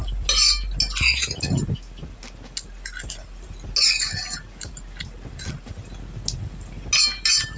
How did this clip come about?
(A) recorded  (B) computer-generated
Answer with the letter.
A